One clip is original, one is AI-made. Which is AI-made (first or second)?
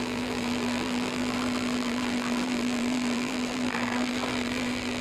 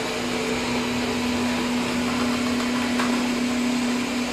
first